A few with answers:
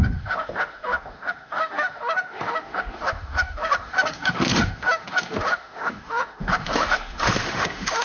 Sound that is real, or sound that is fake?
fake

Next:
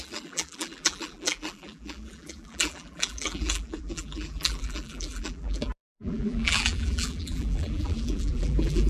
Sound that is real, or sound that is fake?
fake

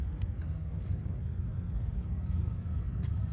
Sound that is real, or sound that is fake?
fake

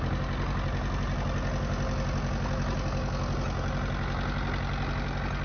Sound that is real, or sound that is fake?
real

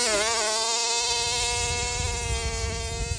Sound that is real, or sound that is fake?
real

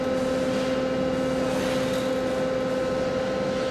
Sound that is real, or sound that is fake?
real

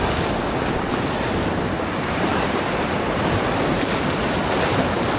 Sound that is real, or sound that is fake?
real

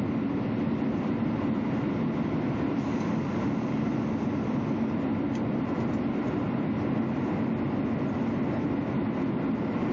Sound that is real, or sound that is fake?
real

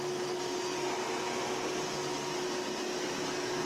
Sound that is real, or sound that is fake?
real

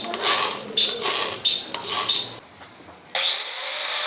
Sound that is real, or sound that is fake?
real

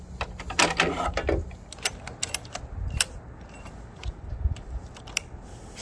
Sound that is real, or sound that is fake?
real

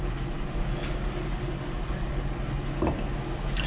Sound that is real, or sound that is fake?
real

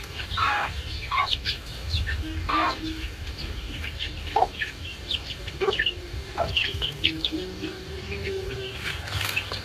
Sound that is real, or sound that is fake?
fake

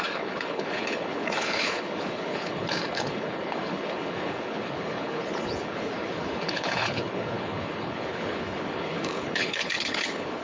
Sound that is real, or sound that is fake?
fake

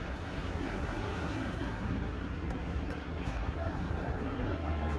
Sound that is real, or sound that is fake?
fake